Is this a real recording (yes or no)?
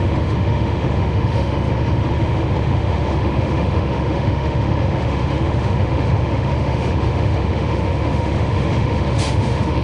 no